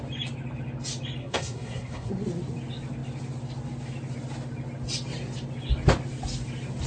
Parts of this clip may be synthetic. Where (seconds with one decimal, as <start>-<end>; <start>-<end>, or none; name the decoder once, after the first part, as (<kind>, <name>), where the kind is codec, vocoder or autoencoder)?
1.2-2.1 (codec, SNAC)